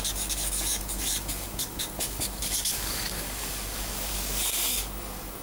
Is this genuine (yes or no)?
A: no